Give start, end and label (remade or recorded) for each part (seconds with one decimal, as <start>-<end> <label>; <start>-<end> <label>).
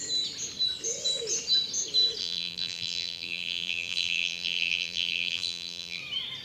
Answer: 0.0-2.2 recorded; 2.2-6.0 remade; 6.0-6.4 recorded